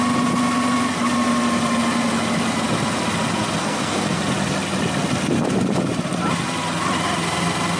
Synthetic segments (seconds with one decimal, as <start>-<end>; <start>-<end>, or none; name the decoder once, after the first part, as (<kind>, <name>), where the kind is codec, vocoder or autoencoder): 3.6-4.2 (codec, SNAC)